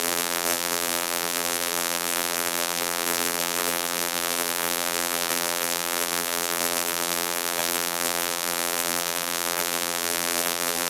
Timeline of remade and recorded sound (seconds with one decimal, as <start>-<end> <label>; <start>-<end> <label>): 0.0-10.9 remade